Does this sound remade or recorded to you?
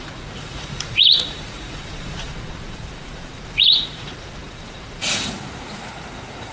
remade